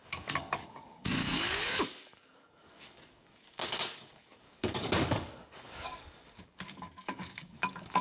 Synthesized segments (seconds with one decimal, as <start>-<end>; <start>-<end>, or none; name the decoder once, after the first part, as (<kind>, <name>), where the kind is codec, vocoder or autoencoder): 0.0-8.0 (codec, DAC)